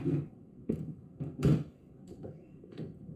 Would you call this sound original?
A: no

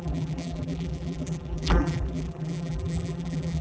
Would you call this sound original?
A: no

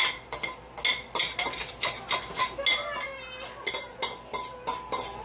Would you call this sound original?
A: yes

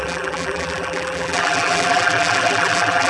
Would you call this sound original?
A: no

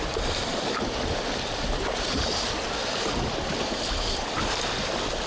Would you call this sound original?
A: no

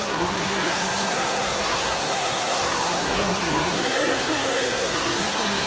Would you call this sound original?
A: no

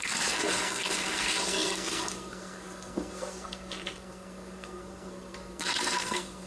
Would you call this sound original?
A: no